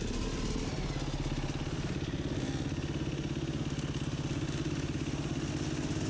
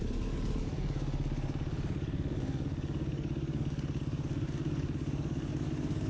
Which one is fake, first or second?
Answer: second